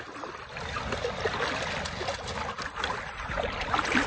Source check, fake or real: real